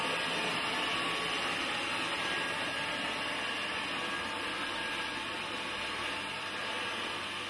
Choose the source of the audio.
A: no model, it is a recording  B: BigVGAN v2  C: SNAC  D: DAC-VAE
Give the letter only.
A